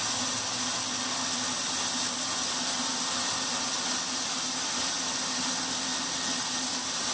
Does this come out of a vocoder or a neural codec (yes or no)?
no